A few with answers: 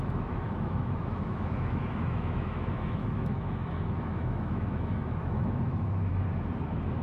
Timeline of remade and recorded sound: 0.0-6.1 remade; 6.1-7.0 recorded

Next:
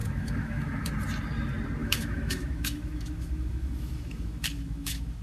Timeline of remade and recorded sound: 0.0-0.9 remade; 0.9-1.8 recorded; 1.8-5.2 remade